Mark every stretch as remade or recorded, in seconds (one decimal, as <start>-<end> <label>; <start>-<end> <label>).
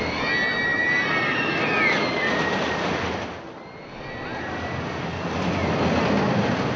0.0-6.8 recorded